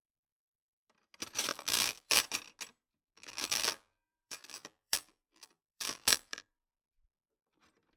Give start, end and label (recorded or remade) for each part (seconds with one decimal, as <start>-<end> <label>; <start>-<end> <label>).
0.0-1.5 recorded; 1.5-2.2 remade; 2.2-3.0 recorded; 3.0-7.6 remade; 7.6-8.0 recorded